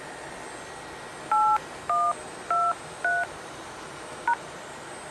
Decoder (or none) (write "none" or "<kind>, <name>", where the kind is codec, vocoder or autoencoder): none